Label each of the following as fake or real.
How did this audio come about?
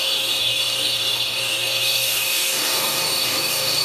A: fake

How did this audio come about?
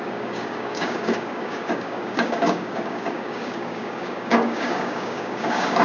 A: fake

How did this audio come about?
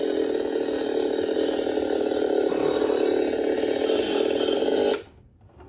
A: real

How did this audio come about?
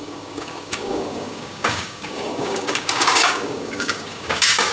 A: fake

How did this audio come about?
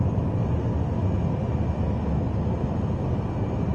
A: real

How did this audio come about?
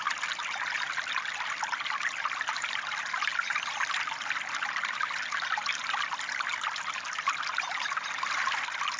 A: real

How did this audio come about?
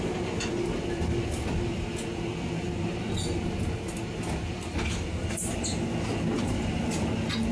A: real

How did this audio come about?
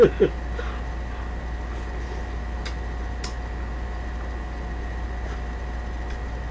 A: real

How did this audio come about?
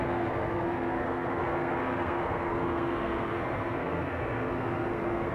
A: fake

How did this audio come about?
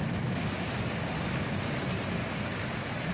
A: real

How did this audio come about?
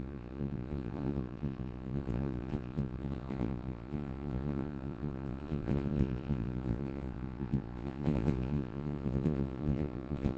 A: fake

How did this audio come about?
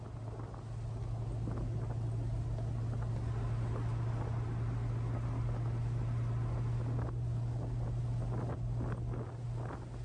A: real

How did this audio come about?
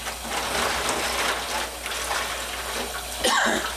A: real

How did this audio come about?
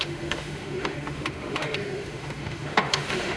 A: fake